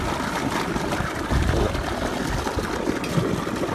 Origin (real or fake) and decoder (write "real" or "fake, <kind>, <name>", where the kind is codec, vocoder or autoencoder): real